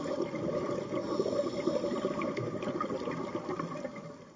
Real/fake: real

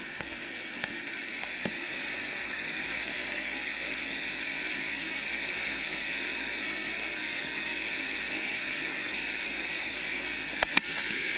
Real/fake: fake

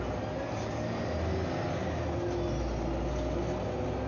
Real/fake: real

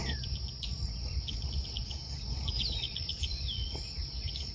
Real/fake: fake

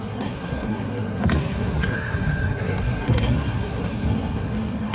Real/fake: fake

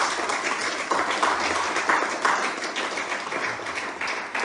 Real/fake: real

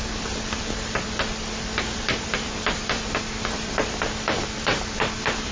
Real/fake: fake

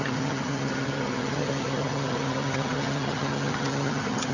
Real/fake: fake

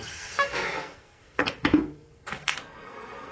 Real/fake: fake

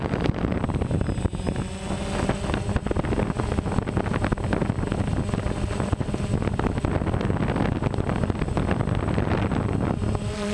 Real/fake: real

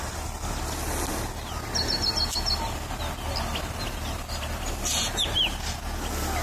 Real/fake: real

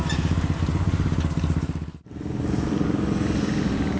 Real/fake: real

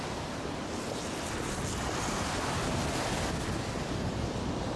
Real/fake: real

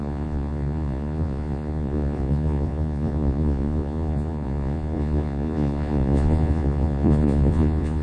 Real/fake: fake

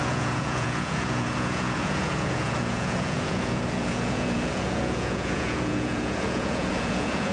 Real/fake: fake